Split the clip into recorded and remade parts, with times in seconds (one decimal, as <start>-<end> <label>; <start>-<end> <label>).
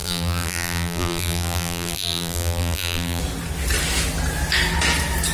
0.0-3.2 remade; 3.2-5.3 recorded